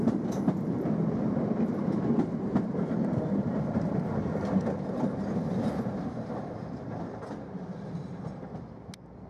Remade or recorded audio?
recorded